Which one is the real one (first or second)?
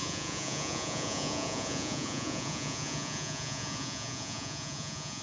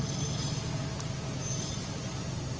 second